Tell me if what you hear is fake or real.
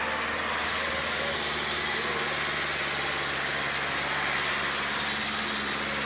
real